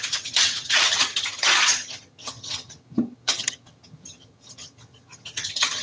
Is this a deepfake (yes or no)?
yes